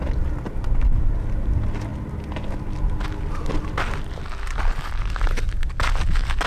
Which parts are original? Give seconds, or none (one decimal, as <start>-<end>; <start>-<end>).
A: 0.0-6.5